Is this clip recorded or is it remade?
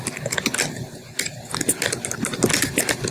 recorded